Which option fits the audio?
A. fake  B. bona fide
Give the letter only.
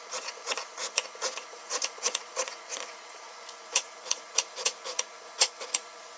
A